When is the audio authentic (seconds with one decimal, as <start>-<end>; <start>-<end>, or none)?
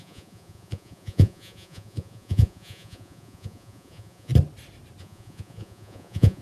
4.3-5.0